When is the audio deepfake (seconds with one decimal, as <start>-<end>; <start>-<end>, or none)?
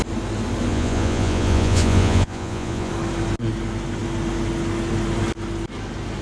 0.7-2.9